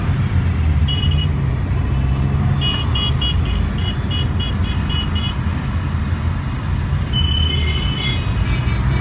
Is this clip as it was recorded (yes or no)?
yes